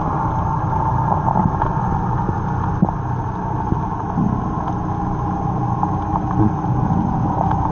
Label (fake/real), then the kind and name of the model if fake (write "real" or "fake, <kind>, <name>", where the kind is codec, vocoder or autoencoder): real